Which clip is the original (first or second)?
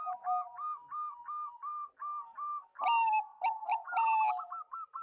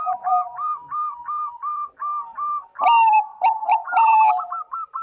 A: first